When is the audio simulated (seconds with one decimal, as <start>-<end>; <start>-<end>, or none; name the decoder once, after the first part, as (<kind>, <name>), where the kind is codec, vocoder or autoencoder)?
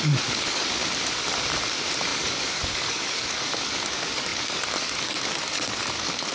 0.0-0.8 (codec, DAC); 1.7-6.3